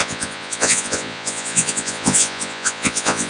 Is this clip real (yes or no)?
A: no